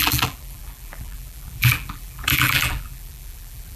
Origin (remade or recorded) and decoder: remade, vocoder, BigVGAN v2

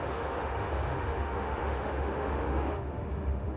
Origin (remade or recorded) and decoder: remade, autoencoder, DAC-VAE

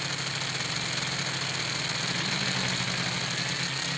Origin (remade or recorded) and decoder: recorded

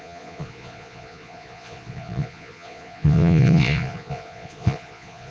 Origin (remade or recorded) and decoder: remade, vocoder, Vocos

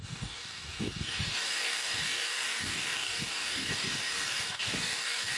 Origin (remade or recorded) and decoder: remade, codec, DAC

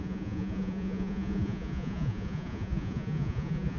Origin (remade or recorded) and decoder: remade, vocoder, Vocos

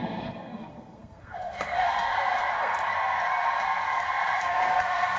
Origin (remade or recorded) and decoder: remade, codec, SNAC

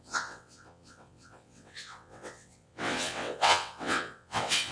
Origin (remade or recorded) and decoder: remade, vocoder, WaveNeXt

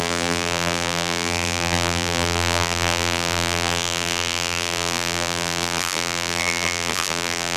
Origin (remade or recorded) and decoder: remade, vocoder, BigVGAN v2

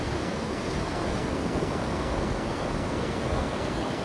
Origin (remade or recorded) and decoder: remade, codec, SNAC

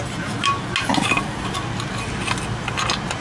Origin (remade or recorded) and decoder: recorded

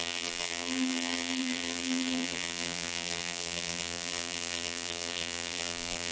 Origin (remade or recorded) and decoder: remade, vocoder, BigVGAN v2